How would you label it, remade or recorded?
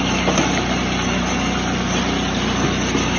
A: recorded